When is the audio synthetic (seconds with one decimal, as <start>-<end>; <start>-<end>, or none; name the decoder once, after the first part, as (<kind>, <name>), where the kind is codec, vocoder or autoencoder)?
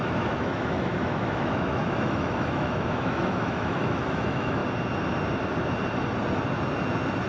0.0-4.6 (autoencoder, DAC-VAE)